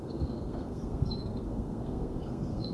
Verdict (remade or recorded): remade